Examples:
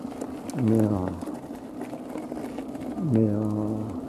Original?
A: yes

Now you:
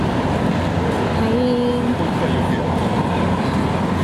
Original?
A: yes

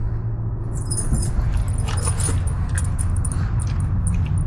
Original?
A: yes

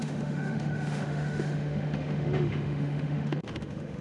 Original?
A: no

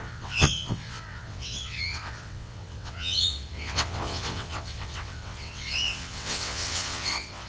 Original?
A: no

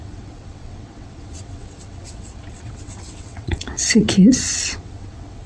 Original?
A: no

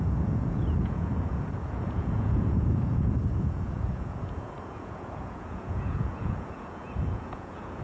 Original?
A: no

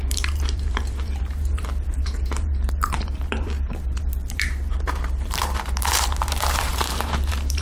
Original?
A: no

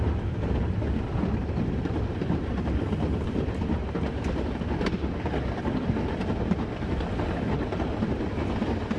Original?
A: yes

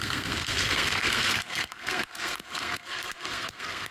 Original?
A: no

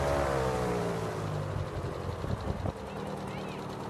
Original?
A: yes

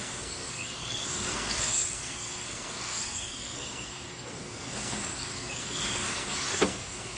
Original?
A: no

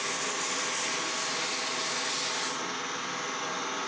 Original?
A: yes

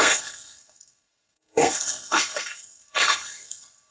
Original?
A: no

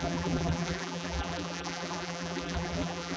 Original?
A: no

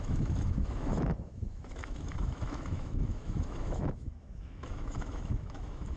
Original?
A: no